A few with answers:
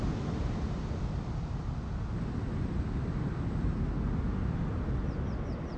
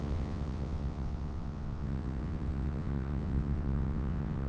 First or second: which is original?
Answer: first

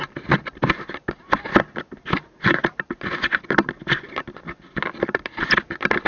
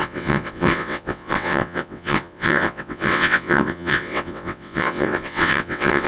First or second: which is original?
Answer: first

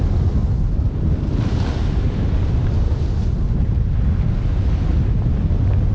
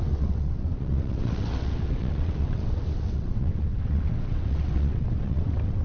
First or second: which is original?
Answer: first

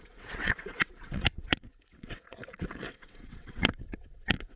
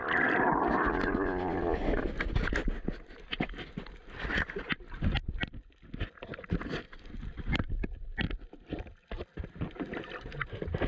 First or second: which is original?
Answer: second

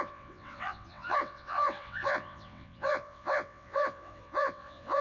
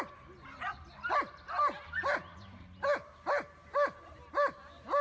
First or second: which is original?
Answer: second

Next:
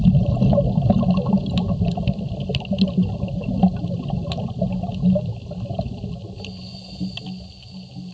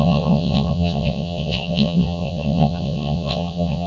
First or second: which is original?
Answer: first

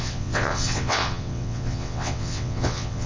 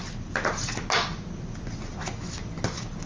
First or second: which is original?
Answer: second